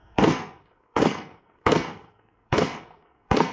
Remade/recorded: remade